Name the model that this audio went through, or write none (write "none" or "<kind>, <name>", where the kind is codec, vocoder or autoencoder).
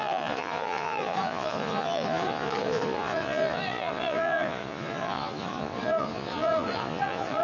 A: vocoder, Vocos